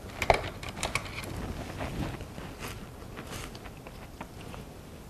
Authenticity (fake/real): real